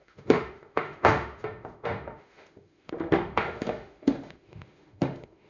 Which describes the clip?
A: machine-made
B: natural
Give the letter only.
A